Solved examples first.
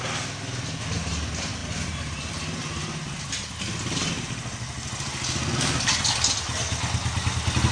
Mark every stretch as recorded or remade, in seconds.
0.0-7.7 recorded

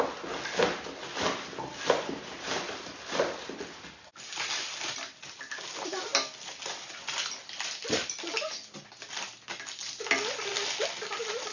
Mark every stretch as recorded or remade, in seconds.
0.0-1.7 recorded; 1.7-2.9 remade; 2.9-11.5 recorded

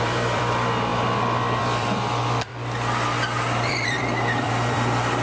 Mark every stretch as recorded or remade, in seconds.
0.0-2.5 remade; 2.5-3.7 recorded; 3.7-5.2 remade

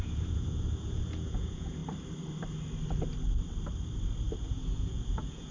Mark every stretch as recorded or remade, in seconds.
0.0-1.8 remade; 1.8-4.4 recorded; 4.4-5.5 remade

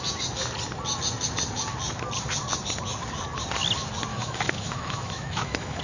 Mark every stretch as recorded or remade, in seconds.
0.0-4.1 recorded; 4.1-5.8 remade

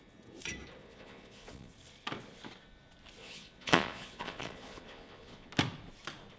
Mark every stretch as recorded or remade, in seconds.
0.0-0.8 recorded; 0.8-1.7 remade; 1.7-3.2 recorded; 3.2-5.5 remade; 5.5-6.4 recorded